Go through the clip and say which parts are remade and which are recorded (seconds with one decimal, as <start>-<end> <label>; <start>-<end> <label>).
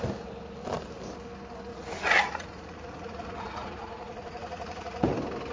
0.0-1.7 recorded; 1.7-5.0 remade; 5.0-5.5 recorded